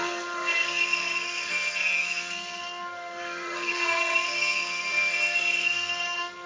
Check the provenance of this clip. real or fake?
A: fake